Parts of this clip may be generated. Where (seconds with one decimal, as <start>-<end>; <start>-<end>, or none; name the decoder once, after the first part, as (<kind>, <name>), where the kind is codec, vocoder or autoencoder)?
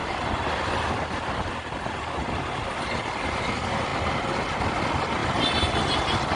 none